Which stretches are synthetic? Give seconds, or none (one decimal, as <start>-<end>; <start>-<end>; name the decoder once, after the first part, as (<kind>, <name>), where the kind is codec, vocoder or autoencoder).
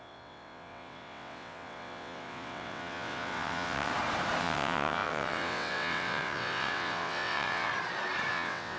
0.0-3.9 (vocoder, WaveNeXt); 4.4-7.7; 8.3-8.8